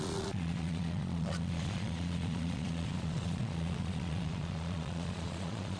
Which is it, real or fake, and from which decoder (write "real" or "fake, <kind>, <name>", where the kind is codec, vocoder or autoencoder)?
fake, vocoder, Vocos